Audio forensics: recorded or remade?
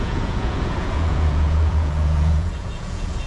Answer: remade